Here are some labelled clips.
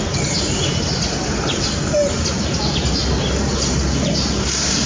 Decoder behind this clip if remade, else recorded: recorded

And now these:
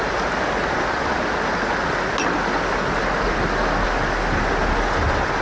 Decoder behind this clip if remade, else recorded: recorded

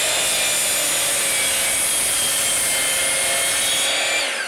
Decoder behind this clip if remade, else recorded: recorded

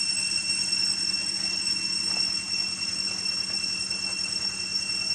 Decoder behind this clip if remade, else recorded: recorded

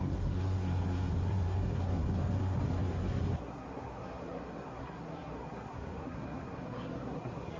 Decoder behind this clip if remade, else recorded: remade, codec, SNAC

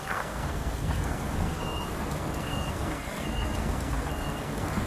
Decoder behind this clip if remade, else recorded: remade, codec, SNAC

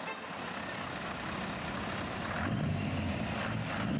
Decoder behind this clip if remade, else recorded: recorded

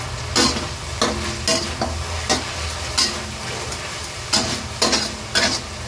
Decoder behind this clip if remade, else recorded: recorded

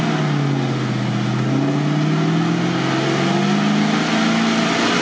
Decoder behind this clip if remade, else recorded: recorded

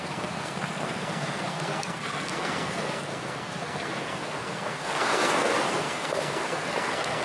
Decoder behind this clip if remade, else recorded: remade, codec, SNAC